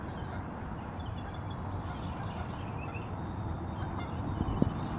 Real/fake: real